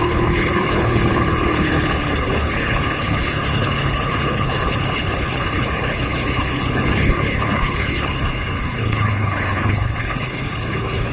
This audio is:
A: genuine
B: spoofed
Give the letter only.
B